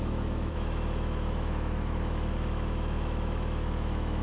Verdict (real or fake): fake